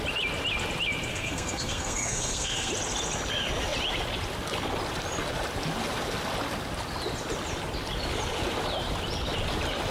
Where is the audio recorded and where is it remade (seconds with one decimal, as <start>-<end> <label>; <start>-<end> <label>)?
0.0-1.1 recorded; 1.1-2.7 remade; 2.7-9.9 recorded